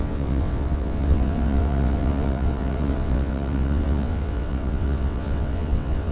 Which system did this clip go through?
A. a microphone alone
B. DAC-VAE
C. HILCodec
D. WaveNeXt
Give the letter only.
D